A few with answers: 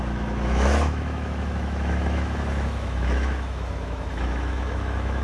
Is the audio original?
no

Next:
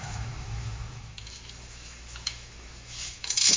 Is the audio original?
no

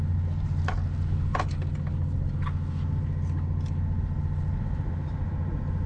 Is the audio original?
yes